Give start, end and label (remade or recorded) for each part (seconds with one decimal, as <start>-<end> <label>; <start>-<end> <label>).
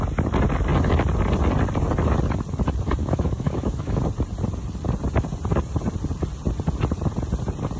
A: 0.0-3.0 recorded; 3.0-4.0 remade; 4.0-7.8 recorded